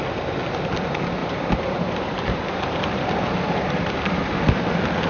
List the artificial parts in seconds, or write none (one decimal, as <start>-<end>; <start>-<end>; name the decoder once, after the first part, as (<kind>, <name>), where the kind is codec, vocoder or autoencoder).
1.2-4.3 (vocoder, BigVGAN v2)